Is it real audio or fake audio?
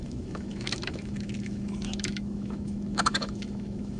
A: fake